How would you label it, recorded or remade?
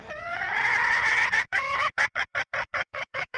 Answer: remade